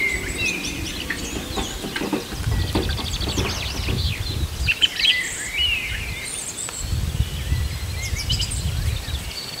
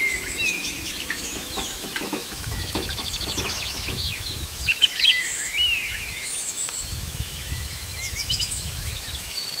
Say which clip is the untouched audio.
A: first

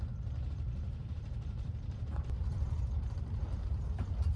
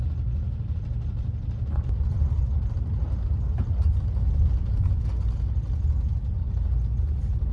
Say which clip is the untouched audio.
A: second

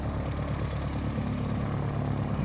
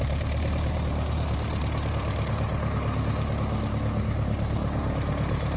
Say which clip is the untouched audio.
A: first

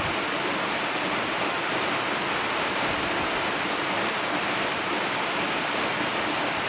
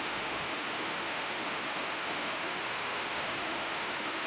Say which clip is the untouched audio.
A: first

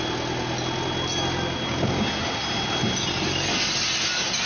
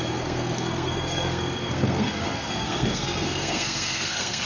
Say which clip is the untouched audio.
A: first